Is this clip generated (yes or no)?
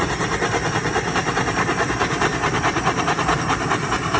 yes